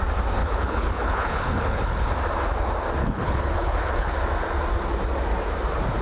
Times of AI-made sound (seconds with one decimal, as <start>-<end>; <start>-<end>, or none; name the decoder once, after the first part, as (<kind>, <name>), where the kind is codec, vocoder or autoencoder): 0.4-2.1 (codec, HILCodec); 3.0-4.1